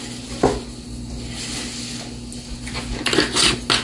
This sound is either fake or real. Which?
real